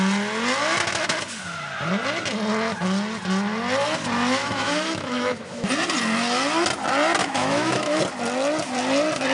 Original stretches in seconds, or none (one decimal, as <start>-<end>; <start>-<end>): 0.0-4.4; 5.7-7.2; 8.0-9.3